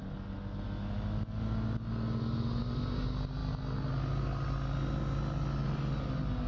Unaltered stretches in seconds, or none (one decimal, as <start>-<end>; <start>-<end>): 0.0-6.5

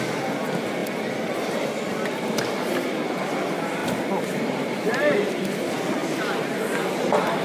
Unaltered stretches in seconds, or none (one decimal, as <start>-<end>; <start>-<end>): 0.0-3.8; 5.3-7.4

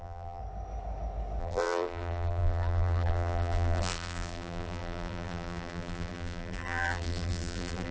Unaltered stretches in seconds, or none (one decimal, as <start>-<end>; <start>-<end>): 0.4-1.4

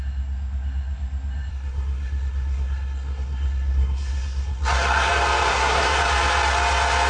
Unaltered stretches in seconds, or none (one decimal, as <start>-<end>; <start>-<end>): 0.0-1.5; 5.1-5.5; 6.0-7.1